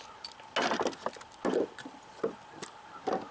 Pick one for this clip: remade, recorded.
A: recorded